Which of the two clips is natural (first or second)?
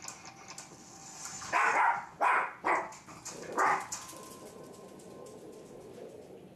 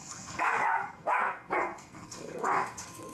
first